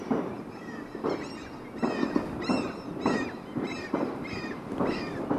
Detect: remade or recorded recorded